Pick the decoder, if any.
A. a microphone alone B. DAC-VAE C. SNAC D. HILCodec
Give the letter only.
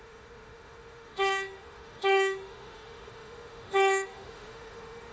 B